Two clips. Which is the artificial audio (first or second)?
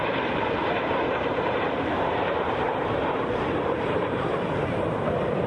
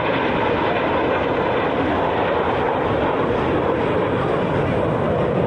first